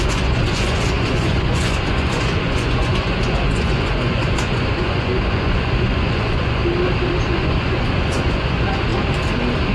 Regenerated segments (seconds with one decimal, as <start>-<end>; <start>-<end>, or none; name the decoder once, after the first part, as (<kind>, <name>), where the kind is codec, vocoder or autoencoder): 0.0-6.6 (vocoder, Vocos); 7.3-8.9